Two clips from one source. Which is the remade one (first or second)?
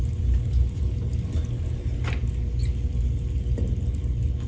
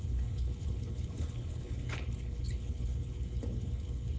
second